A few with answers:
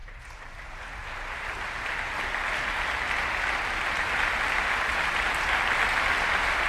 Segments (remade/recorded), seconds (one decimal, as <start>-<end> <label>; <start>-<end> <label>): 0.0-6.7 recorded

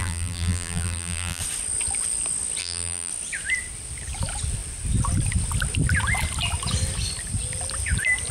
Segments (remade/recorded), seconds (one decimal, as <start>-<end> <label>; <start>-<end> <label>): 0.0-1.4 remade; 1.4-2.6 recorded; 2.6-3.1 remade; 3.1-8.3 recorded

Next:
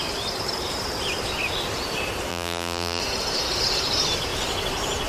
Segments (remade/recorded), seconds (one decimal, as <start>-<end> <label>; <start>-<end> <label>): 0.0-2.3 recorded; 2.3-3.0 remade; 3.0-5.1 recorded

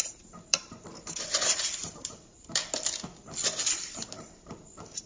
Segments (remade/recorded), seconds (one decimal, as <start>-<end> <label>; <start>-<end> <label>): 0.0-2.6 remade; 2.6-3.7 recorded; 3.7-5.1 remade

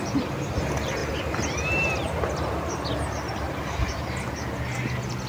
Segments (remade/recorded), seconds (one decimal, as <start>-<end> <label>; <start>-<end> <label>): 0.0-5.3 recorded